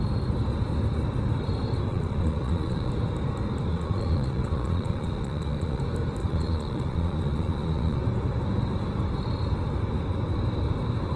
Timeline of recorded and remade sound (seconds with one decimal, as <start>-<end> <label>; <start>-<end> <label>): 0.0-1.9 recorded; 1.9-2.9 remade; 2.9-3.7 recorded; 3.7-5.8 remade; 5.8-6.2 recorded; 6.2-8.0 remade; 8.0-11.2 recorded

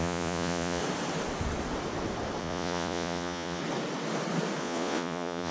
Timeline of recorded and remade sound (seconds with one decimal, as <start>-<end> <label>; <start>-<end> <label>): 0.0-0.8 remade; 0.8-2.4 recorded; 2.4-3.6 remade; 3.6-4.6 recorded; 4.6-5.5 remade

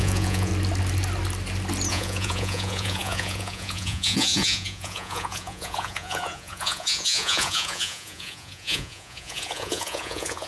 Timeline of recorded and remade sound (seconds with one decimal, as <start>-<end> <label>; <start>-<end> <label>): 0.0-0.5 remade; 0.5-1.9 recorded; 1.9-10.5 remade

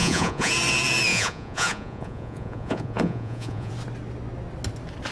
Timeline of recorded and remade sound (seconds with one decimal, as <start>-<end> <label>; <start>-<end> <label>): 0.0-0.5 remade; 0.5-1.1 recorded; 1.1-3.7 remade; 3.7-5.1 recorded